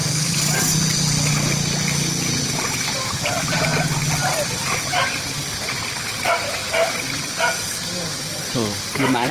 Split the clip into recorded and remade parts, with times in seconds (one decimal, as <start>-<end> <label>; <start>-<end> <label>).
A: 0.0-1.3 recorded; 1.3-3.7 remade; 3.7-4.5 recorded; 4.5-9.3 remade